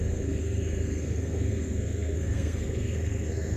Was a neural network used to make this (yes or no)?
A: yes